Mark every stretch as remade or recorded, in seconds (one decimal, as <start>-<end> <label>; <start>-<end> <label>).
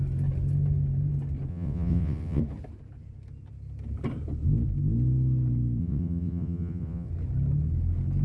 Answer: 0.0-1.5 recorded; 1.5-2.4 remade; 2.4-5.8 recorded; 5.8-7.1 remade; 7.1-8.2 recorded